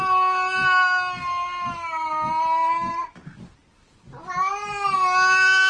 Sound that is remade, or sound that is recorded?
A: recorded